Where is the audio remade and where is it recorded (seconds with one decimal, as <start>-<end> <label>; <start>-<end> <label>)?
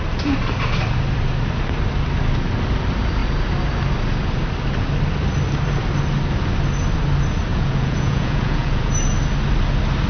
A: 0.0-7.5 recorded; 7.5-8.9 remade; 8.9-10.1 recorded